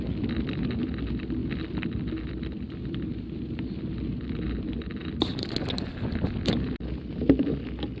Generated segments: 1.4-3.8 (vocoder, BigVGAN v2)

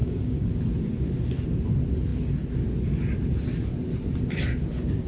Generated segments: 0.0-0.5 (codec, DAC)

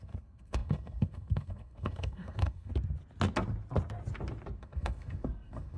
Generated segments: 0.0-2.7 (codec, SNAC); 4.6-5.8

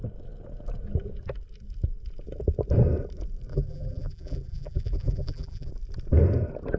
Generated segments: 3.5-5.7 (vocoder, BigVGAN v2)

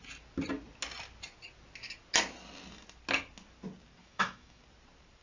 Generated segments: 4.0-4.6 (autoencoder, DAC-VAE)

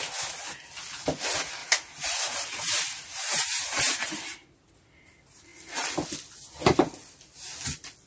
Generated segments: 1.6-4.7 (vocoder, BigVGAN v2)